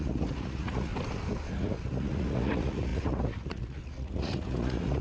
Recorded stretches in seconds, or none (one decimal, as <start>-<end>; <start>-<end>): 0.9-1.5